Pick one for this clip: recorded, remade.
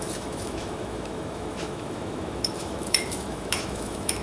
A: remade